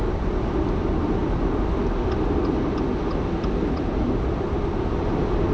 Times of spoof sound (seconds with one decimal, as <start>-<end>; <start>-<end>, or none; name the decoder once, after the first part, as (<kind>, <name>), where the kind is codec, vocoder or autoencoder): none